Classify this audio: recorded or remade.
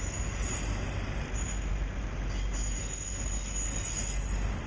recorded